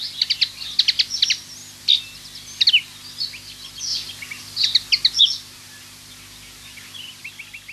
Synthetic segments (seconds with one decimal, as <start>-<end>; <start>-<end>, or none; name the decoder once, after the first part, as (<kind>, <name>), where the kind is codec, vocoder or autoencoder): none